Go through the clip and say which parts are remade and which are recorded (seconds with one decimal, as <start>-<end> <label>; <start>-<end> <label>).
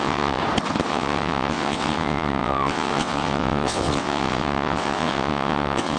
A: 0.0-0.4 remade; 0.4-0.9 recorded; 0.9-6.0 remade